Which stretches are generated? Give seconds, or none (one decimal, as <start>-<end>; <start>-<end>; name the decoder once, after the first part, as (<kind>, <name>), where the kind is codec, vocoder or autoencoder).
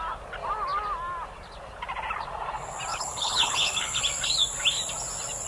2.9-4.0 (codec, HILCodec)